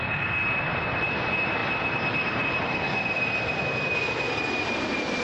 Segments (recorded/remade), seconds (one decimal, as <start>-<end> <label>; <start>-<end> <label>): 0.0-5.2 remade